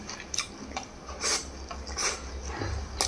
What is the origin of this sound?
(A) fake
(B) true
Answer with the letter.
B